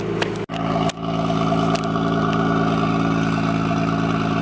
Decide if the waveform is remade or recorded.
recorded